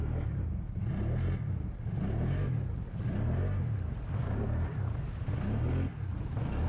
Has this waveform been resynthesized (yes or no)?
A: no